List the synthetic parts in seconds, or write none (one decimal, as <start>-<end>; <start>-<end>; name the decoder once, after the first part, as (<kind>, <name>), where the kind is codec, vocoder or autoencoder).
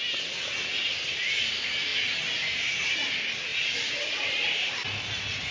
3.5-5.0 (vocoder, BigVGAN v2)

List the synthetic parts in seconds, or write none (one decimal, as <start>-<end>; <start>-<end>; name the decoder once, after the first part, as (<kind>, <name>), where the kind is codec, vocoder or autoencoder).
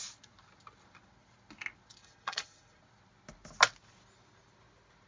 2.0-2.8 (vocoder, Vocos)